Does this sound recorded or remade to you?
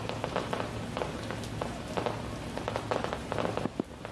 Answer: recorded